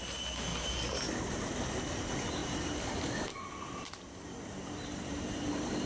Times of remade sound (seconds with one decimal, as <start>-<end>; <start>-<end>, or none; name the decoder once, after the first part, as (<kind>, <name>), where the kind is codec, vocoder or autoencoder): 0.5-1.0 (vocoder, BigVGAN v2); 2.4-5.9